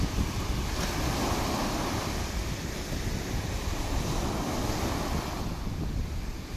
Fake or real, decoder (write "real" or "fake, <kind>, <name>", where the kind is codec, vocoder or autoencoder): fake, vocoder, BigVGAN v2